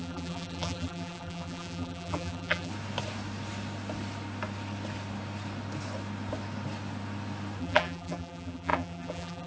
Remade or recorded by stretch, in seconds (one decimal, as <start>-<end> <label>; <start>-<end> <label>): 0.0-2.7 remade; 2.7-7.6 recorded; 7.6-9.5 remade